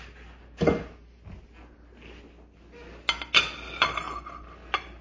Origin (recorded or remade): recorded